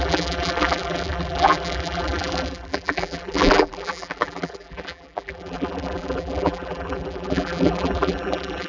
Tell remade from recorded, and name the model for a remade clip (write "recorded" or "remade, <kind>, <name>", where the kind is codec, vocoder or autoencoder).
remade, vocoder, BigVGAN v2